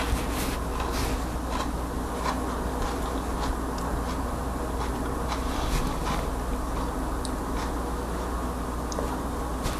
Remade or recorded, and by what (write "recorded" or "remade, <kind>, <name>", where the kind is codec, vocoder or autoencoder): recorded